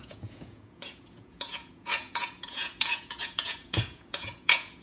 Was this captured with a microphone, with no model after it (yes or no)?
no